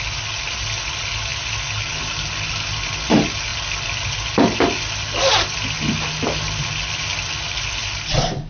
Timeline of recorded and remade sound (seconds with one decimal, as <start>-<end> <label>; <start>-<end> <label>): 0.0-8.5 recorded